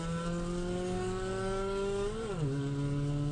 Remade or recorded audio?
remade